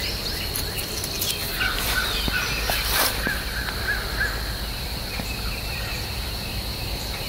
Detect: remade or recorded recorded